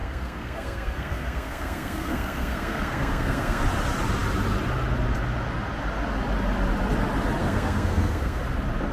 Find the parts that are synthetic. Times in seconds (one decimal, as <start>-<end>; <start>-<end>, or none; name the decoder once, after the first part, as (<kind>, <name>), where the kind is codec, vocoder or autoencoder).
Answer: 0.0-3.6 (codec, SNAC); 7.4-8.4